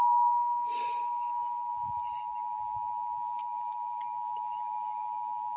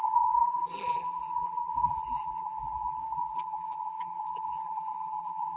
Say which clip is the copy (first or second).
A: second